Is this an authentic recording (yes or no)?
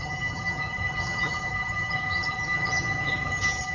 no